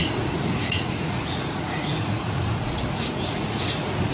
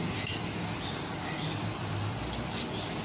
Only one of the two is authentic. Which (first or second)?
second